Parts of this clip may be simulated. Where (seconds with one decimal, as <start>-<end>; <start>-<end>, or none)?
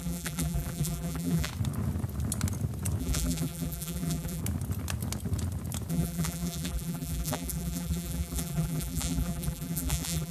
0.0-1.5; 3.0-4.4; 5.9-10.3